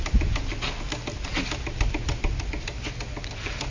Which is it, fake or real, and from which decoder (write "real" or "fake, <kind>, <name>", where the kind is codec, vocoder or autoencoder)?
real